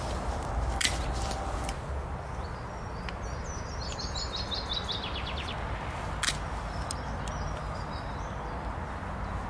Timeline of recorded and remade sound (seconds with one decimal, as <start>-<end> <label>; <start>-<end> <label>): 0.0-9.5 recorded